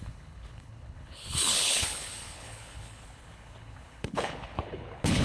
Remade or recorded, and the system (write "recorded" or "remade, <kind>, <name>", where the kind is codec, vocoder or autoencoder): remade, codec, HILCodec